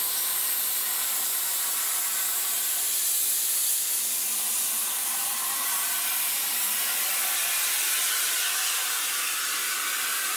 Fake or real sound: real